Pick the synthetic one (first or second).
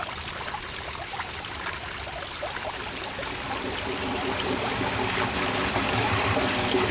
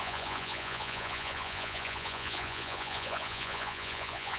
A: second